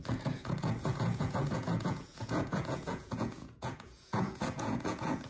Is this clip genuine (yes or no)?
no